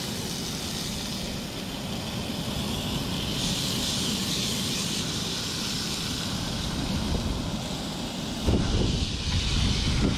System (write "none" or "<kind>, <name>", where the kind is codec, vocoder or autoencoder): none